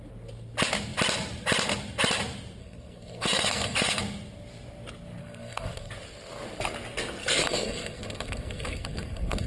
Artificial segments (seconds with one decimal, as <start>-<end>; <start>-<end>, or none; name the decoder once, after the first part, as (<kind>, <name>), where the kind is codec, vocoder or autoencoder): 2.6-4.0 (codec, SNAC); 5.2-5.9; 7.2-9.5